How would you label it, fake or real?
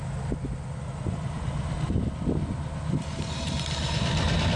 real